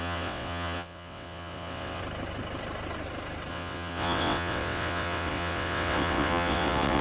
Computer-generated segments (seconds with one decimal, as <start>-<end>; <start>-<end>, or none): 0.0-2.0; 3.5-7.0

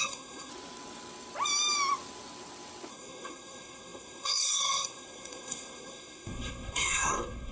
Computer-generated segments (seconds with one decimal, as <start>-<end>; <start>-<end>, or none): 0.0-0.5; 2.9-7.5